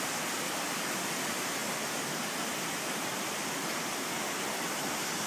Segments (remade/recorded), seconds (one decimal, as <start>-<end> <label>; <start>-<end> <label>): 0.0-5.3 recorded